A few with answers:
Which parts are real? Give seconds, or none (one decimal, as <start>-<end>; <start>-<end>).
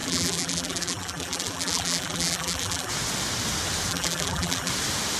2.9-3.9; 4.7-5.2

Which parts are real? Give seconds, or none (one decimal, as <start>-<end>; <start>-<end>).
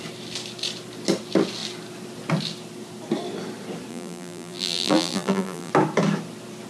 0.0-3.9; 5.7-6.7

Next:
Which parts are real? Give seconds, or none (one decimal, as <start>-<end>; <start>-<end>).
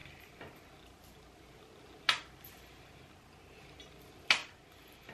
0.0-5.1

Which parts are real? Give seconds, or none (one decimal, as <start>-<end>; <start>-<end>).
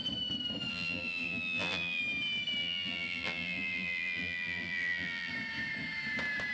0.0-0.7; 2.0-2.6; 5.3-6.5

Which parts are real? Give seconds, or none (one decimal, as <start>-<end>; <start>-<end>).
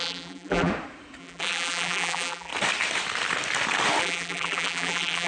0.7-1.2; 2.5-4.0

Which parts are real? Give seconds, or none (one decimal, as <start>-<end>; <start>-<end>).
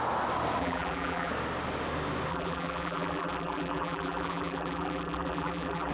0.0-0.6; 1.3-2.3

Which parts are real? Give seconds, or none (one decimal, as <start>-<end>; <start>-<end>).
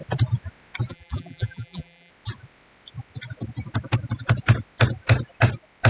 0.0-0.9; 2.1-5.9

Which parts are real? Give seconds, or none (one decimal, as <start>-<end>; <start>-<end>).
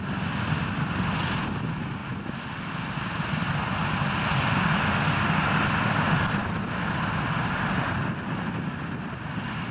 0.0-9.7